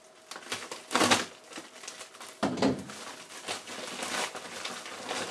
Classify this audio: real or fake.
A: real